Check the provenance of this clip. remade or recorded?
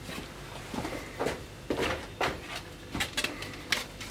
recorded